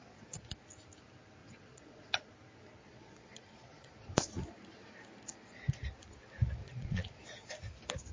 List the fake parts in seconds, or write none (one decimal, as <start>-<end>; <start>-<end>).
0.0-0.5; 1.4-2.3; 2.8-4.3; 6.6-7.5